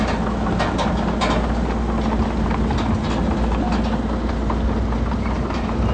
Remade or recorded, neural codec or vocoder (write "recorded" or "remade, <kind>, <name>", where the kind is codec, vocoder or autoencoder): recorded